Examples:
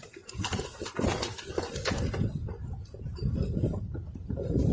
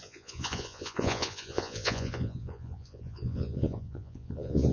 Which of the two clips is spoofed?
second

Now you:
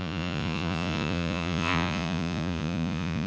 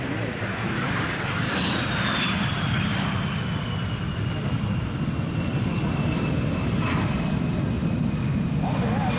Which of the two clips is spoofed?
first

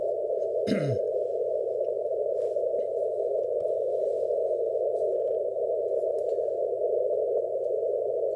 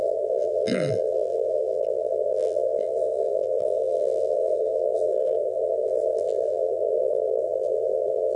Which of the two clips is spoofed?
second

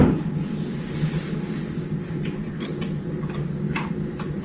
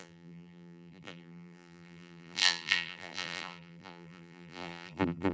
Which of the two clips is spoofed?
second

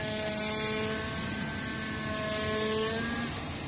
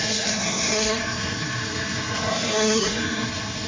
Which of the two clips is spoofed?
second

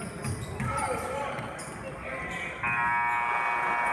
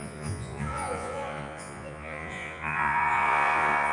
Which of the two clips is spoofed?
second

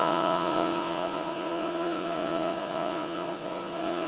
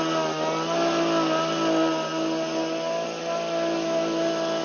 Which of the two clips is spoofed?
first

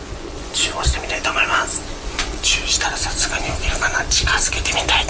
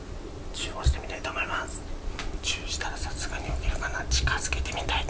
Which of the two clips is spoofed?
first